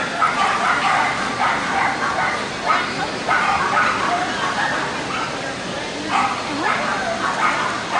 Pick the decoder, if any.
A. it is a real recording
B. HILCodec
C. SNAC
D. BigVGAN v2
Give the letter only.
A